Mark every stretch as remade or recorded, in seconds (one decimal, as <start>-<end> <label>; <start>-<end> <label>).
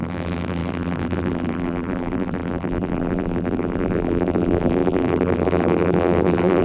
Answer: 0.0-6.6 remade